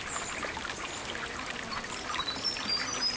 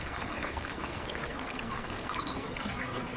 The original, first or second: first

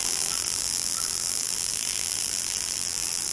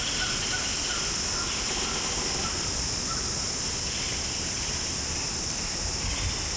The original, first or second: second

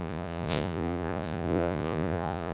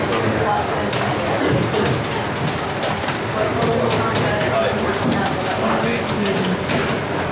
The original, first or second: second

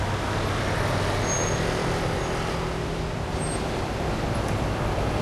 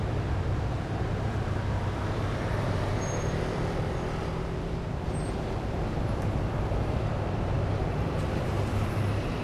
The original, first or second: first